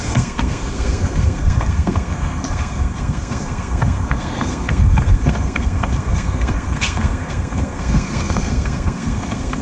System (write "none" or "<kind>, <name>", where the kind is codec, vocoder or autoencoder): codec, SNAC